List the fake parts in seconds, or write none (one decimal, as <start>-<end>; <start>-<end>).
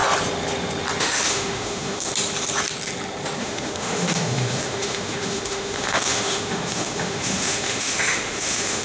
1.0-2.1; 3.4-8.8